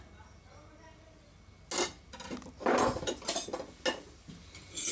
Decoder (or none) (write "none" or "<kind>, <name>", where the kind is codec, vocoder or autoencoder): none